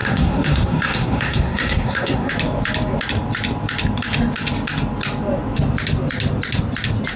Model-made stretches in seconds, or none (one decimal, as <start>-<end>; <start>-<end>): 0.0-2.3